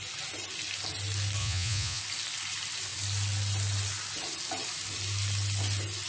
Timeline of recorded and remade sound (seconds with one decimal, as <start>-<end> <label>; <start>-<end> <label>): 0.0-1.4 recorded; 1.4-2.0 remade; 2.0-6.1 recorded